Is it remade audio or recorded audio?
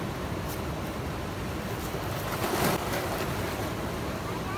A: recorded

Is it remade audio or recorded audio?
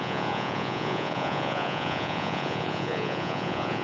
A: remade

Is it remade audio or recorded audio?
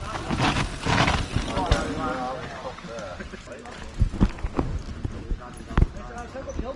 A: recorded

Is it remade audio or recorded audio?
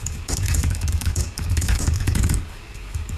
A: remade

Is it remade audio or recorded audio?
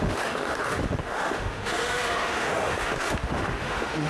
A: remade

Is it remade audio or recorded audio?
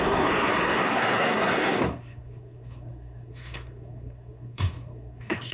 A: remade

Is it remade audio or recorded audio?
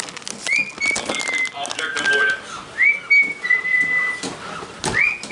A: recorded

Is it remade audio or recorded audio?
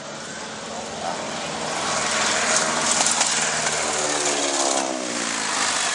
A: recorded